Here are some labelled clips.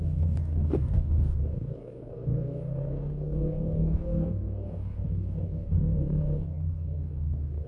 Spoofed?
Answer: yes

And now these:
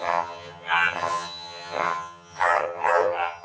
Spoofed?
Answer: yes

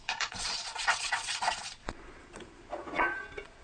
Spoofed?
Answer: yes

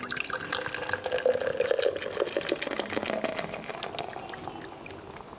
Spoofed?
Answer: no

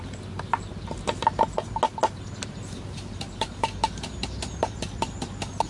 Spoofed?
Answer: no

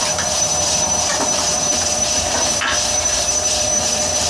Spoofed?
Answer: yes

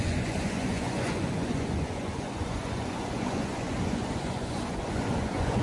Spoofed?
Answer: yes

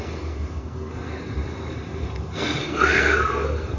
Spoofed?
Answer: yes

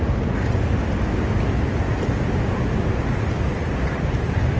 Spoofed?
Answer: no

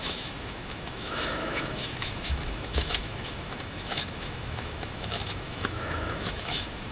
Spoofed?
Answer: yes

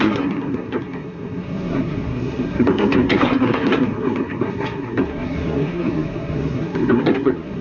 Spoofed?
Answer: yes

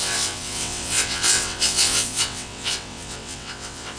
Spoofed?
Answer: yes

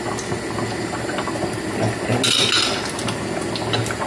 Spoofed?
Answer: no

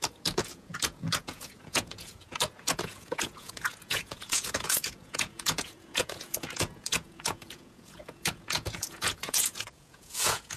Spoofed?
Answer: yes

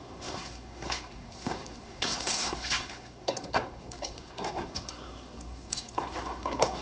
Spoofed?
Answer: yes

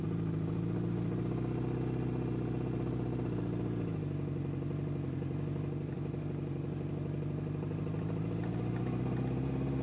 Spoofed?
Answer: no